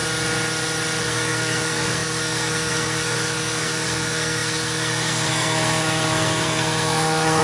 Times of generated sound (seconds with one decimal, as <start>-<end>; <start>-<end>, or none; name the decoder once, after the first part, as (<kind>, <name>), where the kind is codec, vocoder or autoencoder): 1.0-7.4 (codec, SNAC)